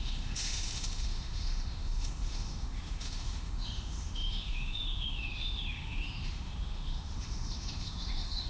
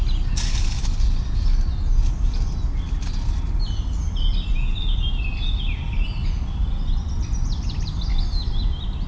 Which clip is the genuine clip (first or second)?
second